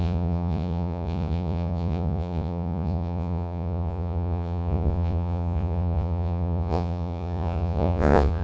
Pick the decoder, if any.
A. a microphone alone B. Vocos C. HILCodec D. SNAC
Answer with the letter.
B